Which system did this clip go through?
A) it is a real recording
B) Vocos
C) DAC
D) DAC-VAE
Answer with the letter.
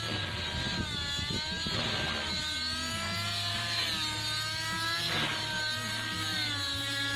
A